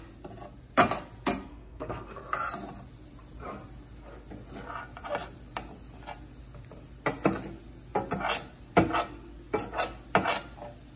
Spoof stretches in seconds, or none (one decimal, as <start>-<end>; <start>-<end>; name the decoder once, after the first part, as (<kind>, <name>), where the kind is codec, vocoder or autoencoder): 1.5-2.2 (codec, SNAC)